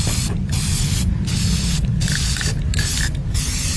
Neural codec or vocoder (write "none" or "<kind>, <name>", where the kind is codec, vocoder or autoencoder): none